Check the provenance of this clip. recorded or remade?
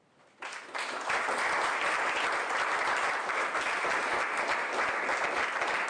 recorded